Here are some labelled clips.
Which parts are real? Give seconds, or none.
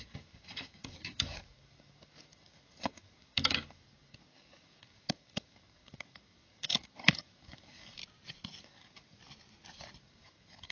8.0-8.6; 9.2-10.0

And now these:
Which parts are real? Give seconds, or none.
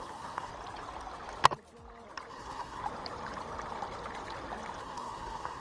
0.5-2.3; 2.8-4.8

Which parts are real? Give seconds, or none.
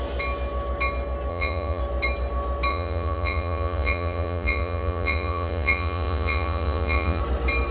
0.0-1.3; 1.8-2.7; 7.2-7.7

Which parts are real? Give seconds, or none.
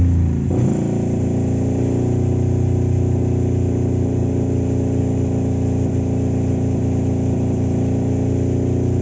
0.0-9.0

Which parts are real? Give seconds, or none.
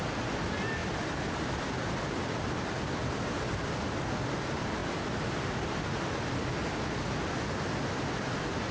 0.0-8.7